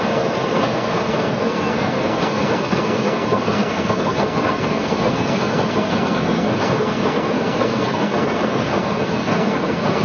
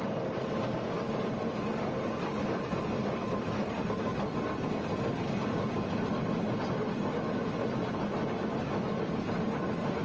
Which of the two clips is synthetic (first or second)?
first